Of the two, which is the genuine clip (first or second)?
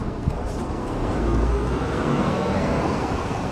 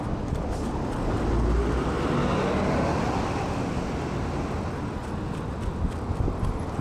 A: second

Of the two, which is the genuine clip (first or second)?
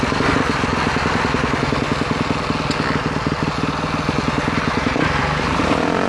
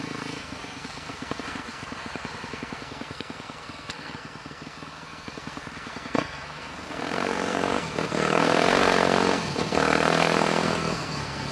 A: first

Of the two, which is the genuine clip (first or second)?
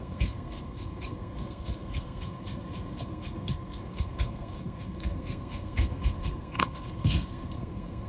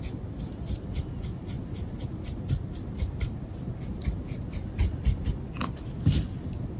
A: second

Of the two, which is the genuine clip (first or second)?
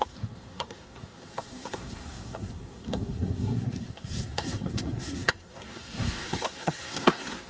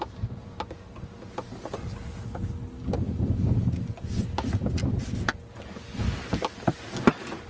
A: second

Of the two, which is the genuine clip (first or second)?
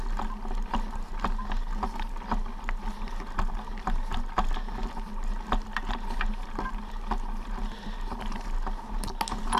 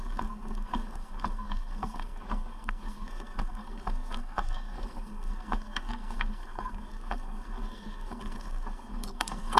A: first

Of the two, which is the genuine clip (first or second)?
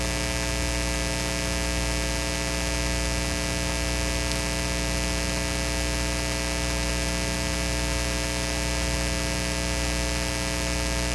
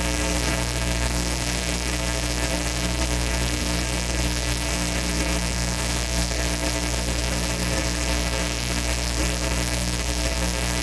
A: first